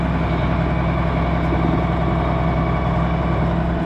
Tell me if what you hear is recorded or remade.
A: recorded